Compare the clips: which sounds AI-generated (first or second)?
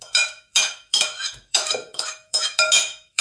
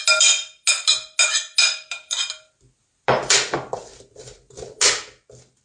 first